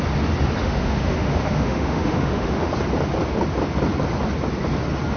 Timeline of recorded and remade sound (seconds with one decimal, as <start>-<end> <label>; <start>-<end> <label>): 0.0-0.6 recorded; 0.6-2.7 remade; 2.7-5.2 recorded